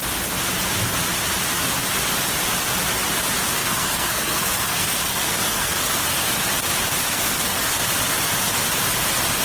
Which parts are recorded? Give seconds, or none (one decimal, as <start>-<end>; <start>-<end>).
0.0-3.6; 6.4-7.0; 7.8-9.4

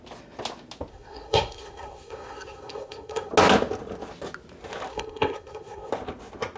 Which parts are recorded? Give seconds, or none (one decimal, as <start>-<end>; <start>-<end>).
0.0-0.9; 3.3-4.9; 5.9-6.6

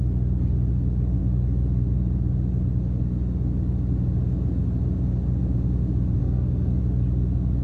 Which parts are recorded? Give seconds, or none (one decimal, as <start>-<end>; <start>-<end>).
0.0-6.2; 6.8-7.6

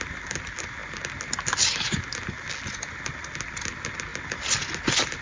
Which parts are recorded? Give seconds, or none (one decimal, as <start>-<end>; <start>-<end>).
0.0-5.2

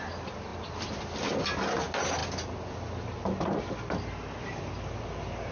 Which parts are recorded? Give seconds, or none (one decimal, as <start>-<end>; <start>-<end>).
0.0-5.5